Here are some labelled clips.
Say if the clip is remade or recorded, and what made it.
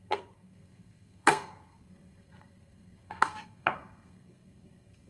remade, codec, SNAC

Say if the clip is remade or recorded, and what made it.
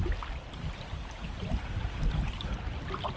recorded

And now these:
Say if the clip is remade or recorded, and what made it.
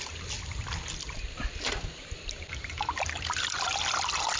recorded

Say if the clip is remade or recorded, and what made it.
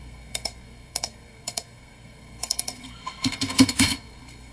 remade, codec, SNAC